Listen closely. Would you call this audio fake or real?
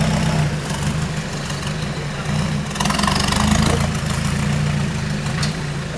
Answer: real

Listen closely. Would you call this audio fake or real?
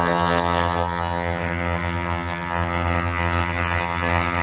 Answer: fake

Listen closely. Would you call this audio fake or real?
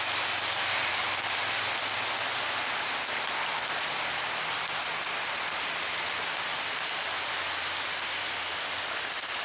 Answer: real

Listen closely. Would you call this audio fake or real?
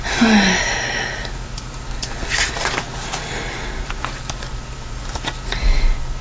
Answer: real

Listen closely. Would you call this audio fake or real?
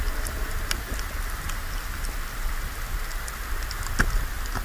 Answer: real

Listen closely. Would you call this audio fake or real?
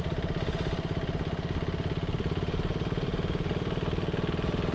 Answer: real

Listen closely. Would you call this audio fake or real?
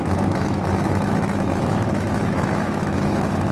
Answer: fake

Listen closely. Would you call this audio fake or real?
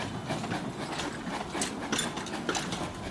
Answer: real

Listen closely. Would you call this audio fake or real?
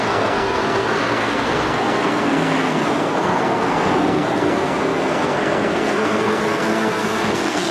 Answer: fake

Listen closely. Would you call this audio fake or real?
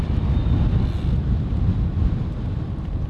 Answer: real